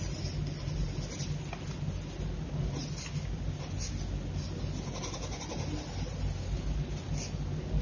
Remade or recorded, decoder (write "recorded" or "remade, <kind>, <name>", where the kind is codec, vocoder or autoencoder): recorded